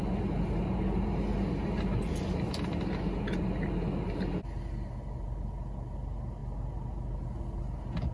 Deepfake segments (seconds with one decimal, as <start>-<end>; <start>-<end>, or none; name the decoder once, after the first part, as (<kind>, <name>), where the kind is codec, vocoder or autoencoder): none

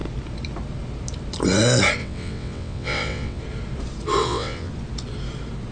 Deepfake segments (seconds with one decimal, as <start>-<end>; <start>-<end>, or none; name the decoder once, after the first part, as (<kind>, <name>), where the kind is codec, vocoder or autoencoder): 2.0-3.4 (vocoder, WaveNeXt); 4.2-4.7